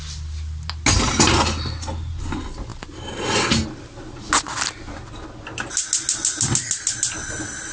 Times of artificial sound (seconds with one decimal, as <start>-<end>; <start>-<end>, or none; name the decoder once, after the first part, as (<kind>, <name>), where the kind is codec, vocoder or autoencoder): none